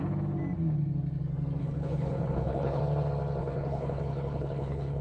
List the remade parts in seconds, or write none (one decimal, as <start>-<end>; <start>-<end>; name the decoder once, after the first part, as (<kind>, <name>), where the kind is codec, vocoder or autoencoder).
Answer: 1.6-2.8 (codec, HILCodec); 3.4-5.0